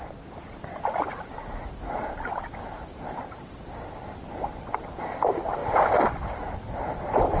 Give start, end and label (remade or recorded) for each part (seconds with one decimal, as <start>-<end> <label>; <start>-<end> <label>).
0.0-7.4 recorded